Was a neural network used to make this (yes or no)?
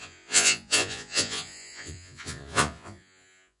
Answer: yes